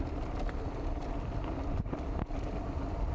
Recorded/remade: recorded